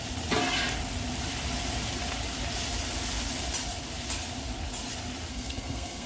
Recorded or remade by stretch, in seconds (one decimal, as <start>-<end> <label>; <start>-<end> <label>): 0.0-5.3 recorded; 5.3-6.1 remade